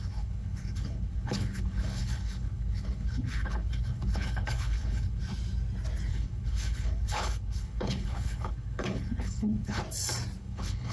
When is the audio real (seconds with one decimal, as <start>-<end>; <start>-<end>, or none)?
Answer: 5.2-6.1; 9.8-10.4

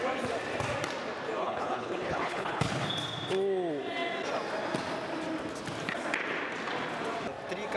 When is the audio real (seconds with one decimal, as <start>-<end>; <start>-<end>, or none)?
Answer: 0.0-1.4; 2.7-7.8

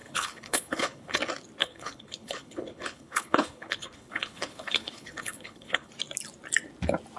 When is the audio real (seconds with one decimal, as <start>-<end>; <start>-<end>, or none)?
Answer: 1.2-1.6; 5.9-7.2

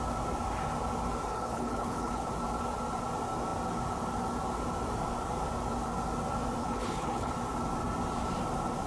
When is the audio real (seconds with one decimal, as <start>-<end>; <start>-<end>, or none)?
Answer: 0.0-1.3; 2.3-6.6; 7.3-8.9

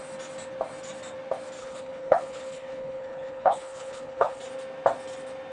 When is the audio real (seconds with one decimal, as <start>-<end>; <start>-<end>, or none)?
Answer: 0.0-1.6; 4.4-5.5

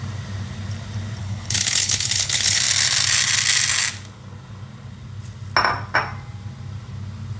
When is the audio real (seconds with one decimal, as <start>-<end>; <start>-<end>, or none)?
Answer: 0.0-1.2; 2.6-7.4